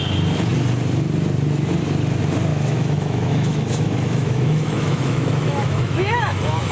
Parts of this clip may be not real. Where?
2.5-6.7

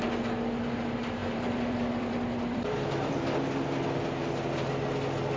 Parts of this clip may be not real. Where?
1.2-3.2

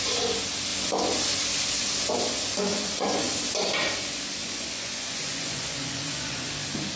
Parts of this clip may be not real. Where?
2.7-3.3; 4.4-6.5

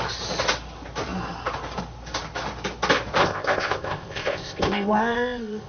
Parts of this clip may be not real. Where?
3.2-5.7